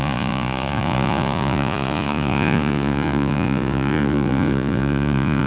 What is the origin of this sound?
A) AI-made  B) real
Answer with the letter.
A